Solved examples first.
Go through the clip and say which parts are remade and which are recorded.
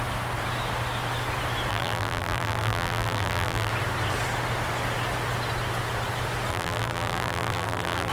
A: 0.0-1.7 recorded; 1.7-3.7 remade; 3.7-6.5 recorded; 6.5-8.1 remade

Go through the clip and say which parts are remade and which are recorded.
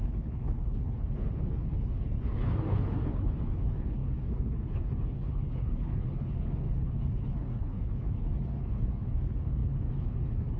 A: 0.0-10.6 remade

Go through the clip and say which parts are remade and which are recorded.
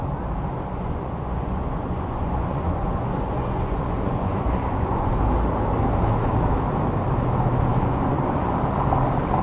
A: 0.0-0.5 recorded; 0.5-5.1 remade; 5.1-7.7 recorded; 7.7-8.5 remade; 8.5-9.4 recorded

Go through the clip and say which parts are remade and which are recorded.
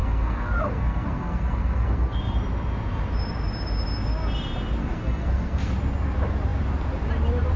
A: 0.0-2.2 remade; 2.2-4.8 recorded; 4.8-5.7 remade; 5.7-7.6 recorded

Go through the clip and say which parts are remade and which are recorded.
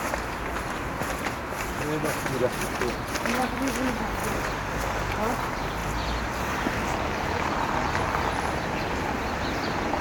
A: 0.0-10.0 recorded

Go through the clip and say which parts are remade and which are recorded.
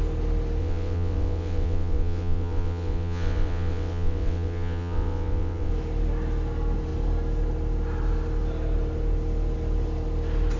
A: 0.0-0.6 recorded; 0.6-5.7 remade; 5.7-10.6 recorded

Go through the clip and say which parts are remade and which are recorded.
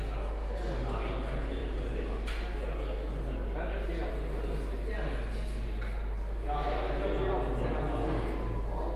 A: 0.0-9.0 recorded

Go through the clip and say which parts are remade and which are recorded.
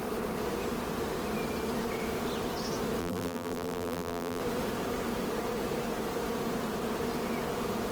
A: 0.0-3.0 recorded; 3.0-4.4 remade; 4.4-7.9 recorded